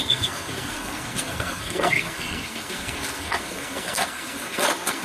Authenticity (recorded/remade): remade